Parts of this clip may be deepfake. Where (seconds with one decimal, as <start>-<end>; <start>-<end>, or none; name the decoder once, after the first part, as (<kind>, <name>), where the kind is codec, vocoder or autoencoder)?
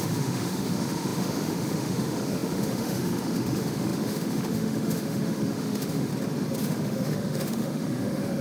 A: 0.0-6.1 (autoencoder, DAC-VAE); 6.6-8.4